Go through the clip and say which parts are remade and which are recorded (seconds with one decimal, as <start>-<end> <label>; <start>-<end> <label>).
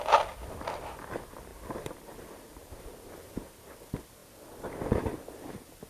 0.0-5.9 recorded